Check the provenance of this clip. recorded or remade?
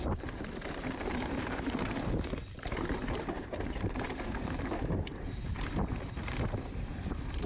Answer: remade